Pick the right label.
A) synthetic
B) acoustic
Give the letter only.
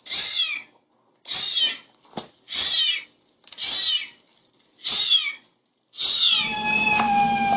B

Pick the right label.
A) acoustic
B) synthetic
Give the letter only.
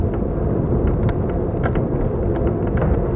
A